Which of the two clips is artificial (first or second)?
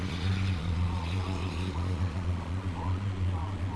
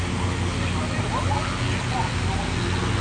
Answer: first